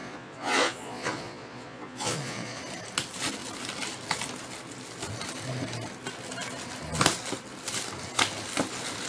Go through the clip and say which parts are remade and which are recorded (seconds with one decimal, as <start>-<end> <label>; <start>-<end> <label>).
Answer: 0.0-2.6 remade; 2.6-9.1 recorded